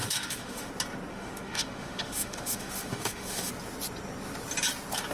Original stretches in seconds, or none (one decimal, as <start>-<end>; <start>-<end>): 0.7-1.1; 3.5-5.1